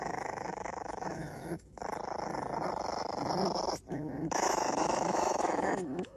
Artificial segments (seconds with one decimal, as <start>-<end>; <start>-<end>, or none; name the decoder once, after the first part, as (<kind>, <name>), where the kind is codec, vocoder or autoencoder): 0.0-1.8 (autoencoder, DAC-VAE); 3.9-6.2